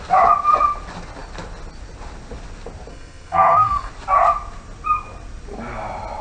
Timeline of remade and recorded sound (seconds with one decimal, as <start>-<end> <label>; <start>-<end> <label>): 0.0-2.9 recorded; 2.9-3.9 remade; 3.9-6.2 recorded